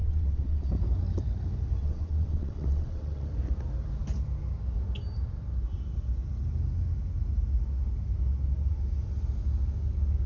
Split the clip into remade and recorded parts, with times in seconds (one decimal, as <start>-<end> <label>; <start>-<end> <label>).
0.0-0.7 remade; 0.7-1.8 recorded; 1.8-3.3 remade; 3.3-10.3 recorded